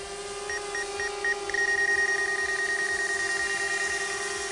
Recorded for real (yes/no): yes